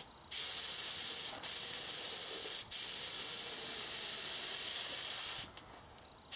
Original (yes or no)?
yes